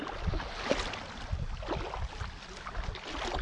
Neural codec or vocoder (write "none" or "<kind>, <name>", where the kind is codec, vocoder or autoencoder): none